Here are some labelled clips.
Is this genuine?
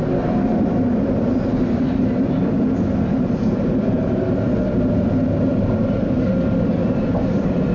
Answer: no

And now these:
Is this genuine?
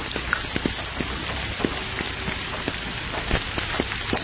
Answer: yes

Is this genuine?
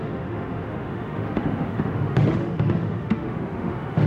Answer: no